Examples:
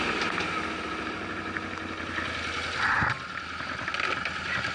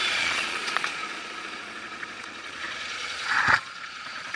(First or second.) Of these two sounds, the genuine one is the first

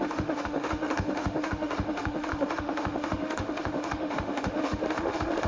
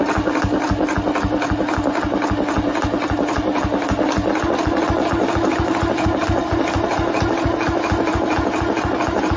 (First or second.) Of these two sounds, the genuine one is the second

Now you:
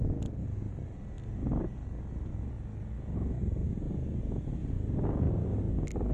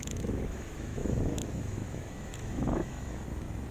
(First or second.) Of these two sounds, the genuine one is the first